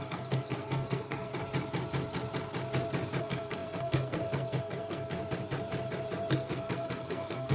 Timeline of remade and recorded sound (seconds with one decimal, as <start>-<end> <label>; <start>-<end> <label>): 0.0-1.3 remade; 1.3-3.2 recorded; 3.2-5.2 remade; 5.2-6.3 recorded; 6.3-7.5 remade